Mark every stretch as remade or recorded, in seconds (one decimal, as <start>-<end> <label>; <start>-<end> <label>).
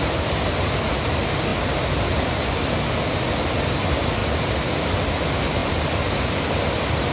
0.0-7.1 recorded